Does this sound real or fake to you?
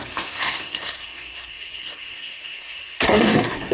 fake